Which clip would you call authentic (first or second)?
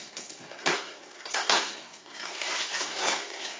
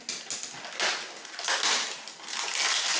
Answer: second